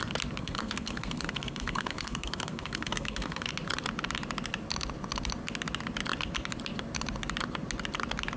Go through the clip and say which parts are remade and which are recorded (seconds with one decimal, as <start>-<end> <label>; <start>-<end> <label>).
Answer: 0.0-0.4 recorded; 0.4-3.5 remade; 3.5-8.4 recorded